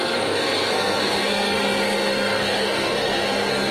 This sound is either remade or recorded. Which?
remade